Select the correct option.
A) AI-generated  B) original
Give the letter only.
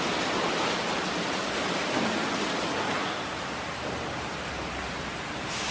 B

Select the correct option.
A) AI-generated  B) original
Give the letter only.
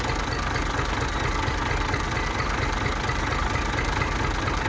B